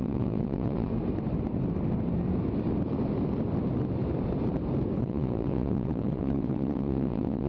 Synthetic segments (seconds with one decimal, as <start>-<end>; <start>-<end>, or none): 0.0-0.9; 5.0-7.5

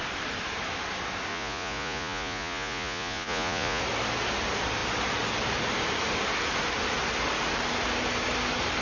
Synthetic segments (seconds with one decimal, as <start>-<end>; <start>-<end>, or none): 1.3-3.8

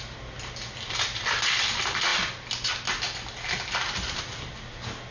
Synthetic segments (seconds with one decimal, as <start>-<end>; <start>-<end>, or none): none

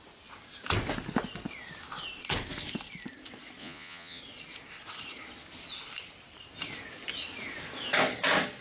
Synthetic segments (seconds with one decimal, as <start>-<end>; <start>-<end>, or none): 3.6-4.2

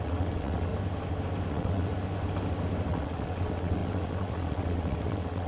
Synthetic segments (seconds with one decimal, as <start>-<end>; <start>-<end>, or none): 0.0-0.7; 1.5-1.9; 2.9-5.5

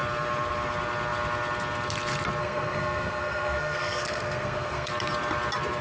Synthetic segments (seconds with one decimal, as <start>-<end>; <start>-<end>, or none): 2.4-4.9

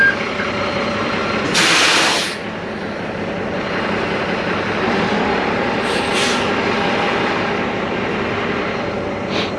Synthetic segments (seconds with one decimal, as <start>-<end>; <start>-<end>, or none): none

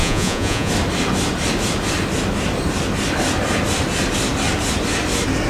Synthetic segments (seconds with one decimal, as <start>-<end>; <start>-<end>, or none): 0.0-0.7